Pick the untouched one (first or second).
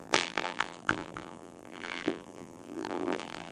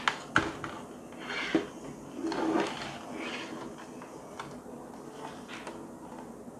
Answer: second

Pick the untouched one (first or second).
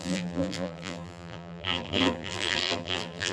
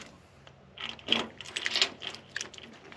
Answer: second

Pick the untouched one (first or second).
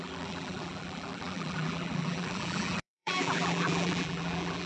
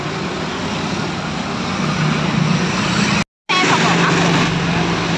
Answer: second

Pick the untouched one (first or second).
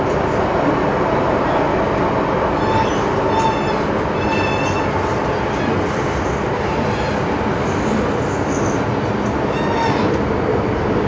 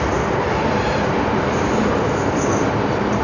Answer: first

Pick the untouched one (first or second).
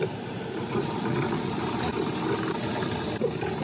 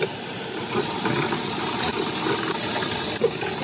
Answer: first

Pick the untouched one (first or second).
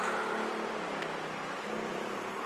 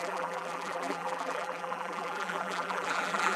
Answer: first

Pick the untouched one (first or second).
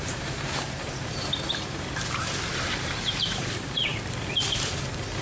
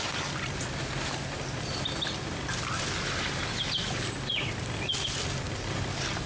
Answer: second